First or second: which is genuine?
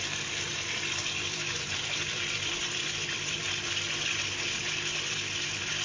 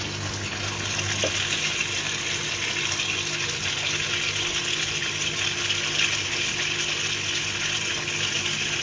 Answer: second